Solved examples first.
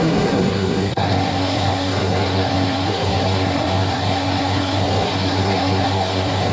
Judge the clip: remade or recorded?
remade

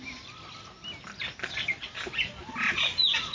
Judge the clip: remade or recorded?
recorded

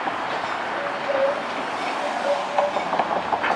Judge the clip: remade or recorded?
recorded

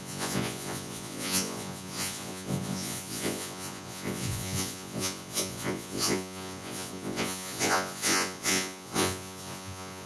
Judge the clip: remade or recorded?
remade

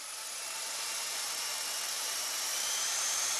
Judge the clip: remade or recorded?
remade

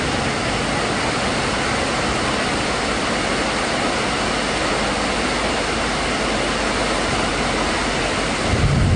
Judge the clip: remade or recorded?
recorded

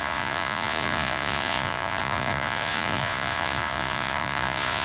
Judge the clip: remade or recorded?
remade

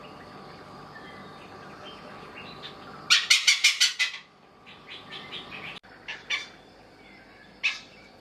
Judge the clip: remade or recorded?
recorded